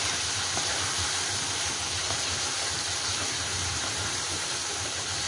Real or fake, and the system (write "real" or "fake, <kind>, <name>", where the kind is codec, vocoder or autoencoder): fake, vocoder, BigVGAN v2